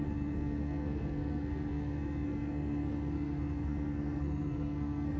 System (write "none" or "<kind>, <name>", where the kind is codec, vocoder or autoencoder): codec, SNAC